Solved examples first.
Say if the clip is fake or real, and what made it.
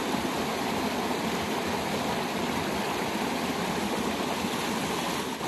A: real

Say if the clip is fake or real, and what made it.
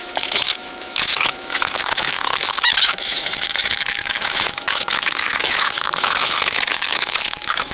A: fake, autoencoder, DAC-VAE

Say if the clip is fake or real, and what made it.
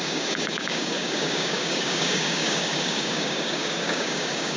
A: fake, codec, DAC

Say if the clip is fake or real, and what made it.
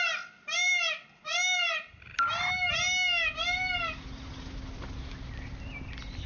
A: real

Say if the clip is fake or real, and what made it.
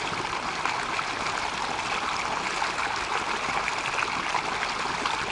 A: real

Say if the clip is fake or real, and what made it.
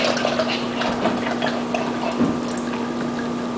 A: real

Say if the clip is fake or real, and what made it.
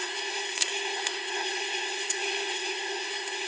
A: fake, codec, SNAC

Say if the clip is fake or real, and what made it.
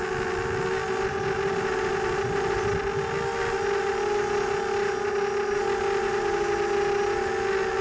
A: real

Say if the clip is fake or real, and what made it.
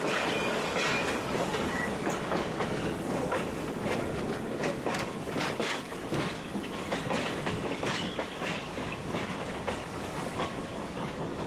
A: fake, codec, DAC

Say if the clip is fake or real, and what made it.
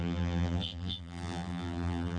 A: fake, vocoder, BigVGAN v2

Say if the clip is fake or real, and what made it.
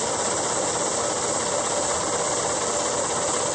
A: real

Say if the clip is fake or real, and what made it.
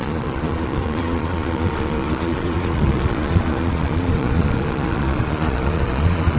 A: fake, vocoder, Vocos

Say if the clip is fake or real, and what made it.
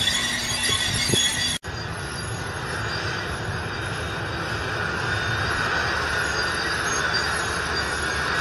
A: real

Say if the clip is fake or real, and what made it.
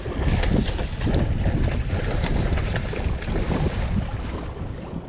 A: real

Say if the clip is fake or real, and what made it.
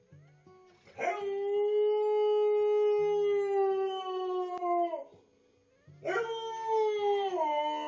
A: real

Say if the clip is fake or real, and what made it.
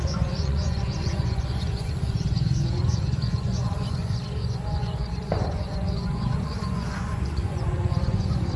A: fake, vocoder, Vocos